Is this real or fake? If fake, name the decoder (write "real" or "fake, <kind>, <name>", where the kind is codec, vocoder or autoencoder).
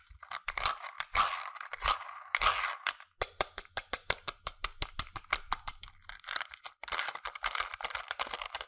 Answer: real